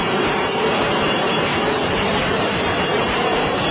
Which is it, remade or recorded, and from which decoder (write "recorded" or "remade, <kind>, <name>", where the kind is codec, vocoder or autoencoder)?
remade, vocoder, BigVGAN v2